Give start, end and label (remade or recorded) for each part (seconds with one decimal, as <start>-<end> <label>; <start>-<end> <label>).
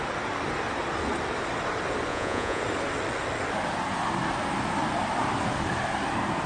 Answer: 0.0-2.1 recorded; 2.1-2.6 remade; 2.6-6.5 recorded